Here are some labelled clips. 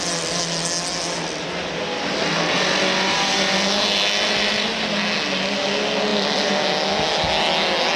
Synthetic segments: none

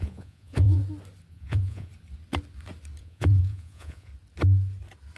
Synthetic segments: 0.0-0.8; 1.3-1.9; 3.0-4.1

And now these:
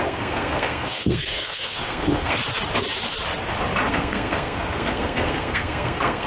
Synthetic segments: 0.0-2.4; 3.9-6.3

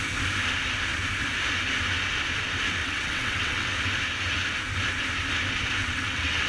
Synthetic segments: 2.8-3.7; 5.8-6.5

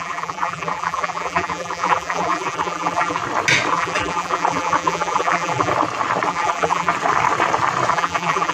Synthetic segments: 0.0-3.2; 3.7-5.7; 6.3-6.9; 7.9-8.5